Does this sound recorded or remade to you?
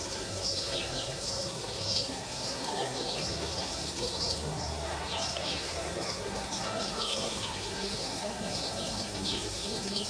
remade